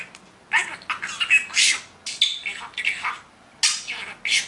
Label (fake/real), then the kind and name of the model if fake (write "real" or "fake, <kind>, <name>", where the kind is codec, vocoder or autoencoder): real